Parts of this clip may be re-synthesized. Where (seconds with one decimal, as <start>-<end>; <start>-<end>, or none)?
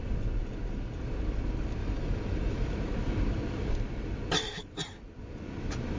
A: 1.8-2.7